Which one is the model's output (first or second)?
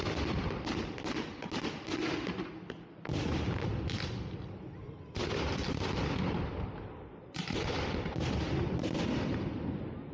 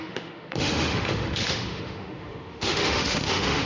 second